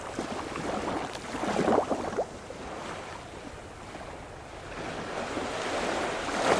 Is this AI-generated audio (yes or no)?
no